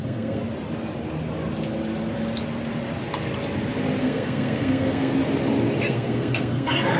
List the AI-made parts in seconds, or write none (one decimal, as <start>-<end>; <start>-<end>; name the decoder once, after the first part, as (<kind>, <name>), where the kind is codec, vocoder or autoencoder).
0.0-0.4 (codec, SNAC); 4.0-5.1; 5.8-7.0